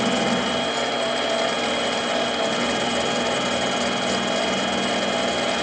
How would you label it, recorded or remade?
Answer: recorded